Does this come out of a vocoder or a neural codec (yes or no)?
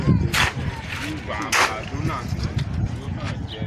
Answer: no